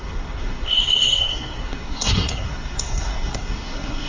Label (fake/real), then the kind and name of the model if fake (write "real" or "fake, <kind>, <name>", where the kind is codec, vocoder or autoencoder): fake, codec, SNAC